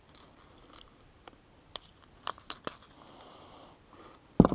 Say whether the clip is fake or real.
real